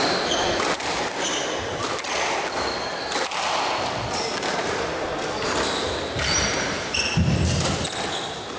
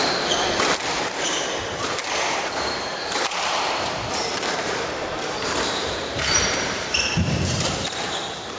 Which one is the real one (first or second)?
first